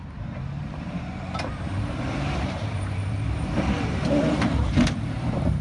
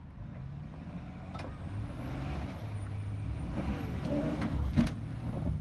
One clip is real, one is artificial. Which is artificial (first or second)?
first